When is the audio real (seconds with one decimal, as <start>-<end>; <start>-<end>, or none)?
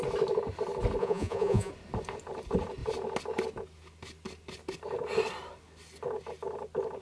0.0-1.0; 1.7-7.0